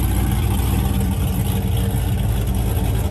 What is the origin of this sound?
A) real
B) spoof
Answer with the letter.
A